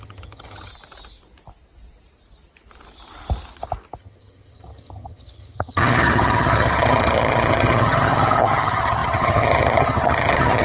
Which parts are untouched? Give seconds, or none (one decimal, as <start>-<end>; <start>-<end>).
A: 0.7-4.0